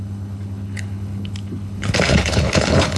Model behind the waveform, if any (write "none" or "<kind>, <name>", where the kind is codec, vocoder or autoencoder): codec, HILCodec